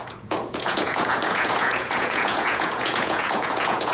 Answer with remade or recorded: remade